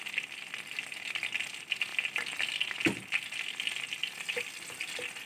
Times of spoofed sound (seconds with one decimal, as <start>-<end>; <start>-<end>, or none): none